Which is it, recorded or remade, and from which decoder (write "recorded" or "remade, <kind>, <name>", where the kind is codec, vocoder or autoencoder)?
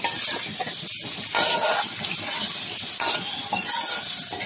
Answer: recorded